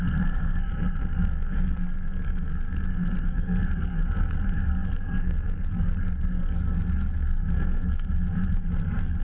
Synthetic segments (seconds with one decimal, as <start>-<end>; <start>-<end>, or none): 0.0-9.2